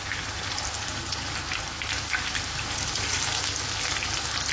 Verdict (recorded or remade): recorded